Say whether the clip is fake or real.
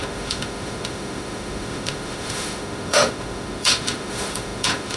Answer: fake